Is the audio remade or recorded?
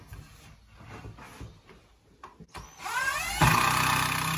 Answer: recorded